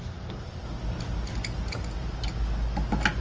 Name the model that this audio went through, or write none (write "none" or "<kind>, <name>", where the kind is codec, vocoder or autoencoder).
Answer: none